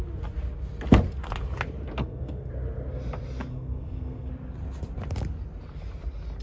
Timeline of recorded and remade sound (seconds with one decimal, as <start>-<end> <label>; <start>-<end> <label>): 0.0-2.0 recorded; 2.0-2.5 remade; 2.5-3.5 recorded; 3.5-4.3 remade; 4.3-6.4 recorded

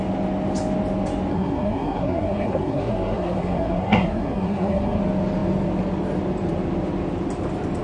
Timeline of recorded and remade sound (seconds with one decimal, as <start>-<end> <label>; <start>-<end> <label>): 0.0-1.3 recorded; 1.3-5.0 remade; 5.0-7.8 recorded

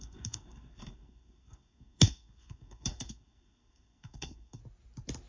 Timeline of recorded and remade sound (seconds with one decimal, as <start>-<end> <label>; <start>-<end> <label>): 0.0-4.6 remade; 4.6-5.3 recorded

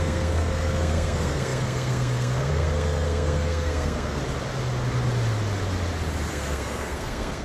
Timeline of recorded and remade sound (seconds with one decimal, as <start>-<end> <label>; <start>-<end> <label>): 0.0-4.2 remade; 4.2-6.3 recorded; 6.3-7.4 remade

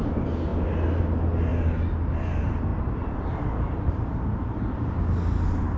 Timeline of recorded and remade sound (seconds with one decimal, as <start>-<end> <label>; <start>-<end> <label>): 0.0-5.8 recorded